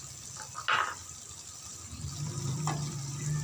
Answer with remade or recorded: recorded